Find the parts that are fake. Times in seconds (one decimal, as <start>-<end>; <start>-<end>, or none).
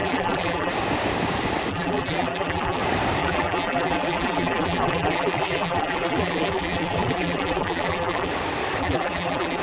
0.0-0.7; 1.7-2.8; 3.2-8.3; 8.8-9.6